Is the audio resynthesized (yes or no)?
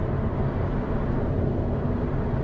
no